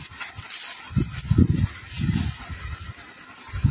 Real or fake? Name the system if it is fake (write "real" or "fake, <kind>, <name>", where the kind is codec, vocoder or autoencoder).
real